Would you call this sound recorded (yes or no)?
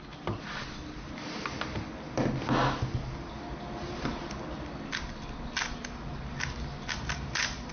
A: yes